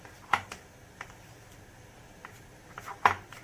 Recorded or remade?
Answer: remade